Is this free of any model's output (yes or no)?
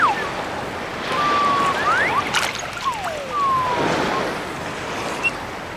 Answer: yes